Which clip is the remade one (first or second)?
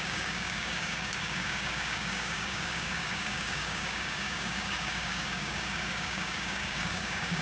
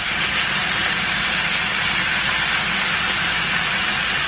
first